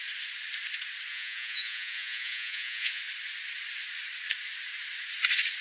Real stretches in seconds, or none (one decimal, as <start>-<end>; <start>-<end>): 0.0-1.1; 3.0-5.6